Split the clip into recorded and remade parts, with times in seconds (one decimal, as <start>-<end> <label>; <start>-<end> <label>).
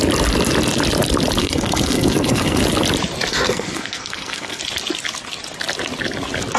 0.0-1.4 recorded; 1.4-2.6 remade; 2.6-3.3 recorded; 3.3-4.6 remade; 4.6-6.6 recorded